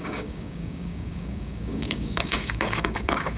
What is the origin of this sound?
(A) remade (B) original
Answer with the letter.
A